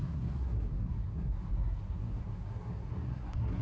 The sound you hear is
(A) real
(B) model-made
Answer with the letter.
B